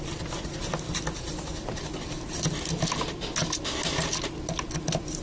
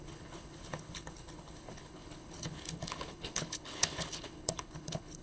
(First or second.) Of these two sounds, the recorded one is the first